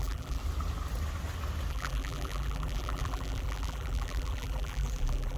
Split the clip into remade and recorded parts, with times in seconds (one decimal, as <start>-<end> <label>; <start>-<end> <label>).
0.0-0.4 remade; 0.4-1.7 recorded; 1.7-5.4 remade